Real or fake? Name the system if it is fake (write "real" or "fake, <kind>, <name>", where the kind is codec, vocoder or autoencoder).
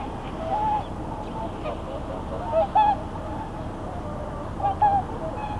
real